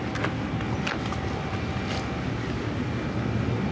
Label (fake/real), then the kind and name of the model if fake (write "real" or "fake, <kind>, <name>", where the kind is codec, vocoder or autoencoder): real